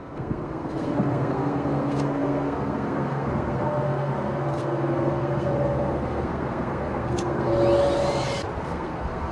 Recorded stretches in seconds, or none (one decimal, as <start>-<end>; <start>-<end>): 7.5-8.6